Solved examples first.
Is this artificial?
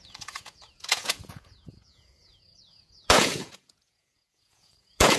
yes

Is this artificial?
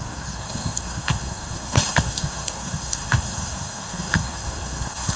yes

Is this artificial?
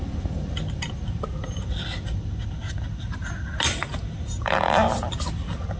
no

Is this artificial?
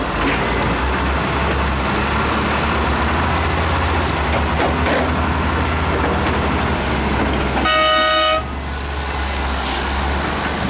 no